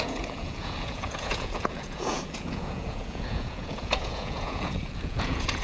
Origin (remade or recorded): remade